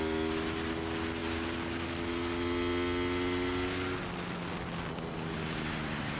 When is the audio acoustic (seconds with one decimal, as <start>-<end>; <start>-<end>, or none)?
0.0-6.2